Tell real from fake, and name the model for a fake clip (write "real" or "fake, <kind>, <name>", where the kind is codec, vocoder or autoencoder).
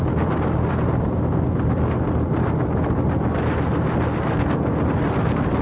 real